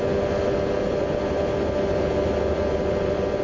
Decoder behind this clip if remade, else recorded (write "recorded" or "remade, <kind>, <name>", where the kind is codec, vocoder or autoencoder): recorded